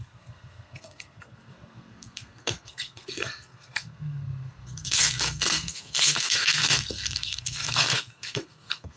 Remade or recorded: remade